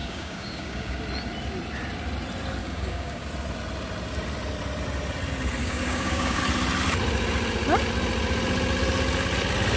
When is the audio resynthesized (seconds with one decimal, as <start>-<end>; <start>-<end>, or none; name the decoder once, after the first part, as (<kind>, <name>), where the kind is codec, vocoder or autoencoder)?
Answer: 0.0-1.0 (codec, DAC); 2.6-3.3; 5.6-6.4